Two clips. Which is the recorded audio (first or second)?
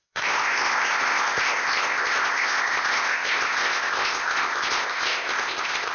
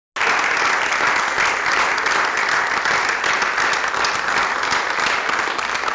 second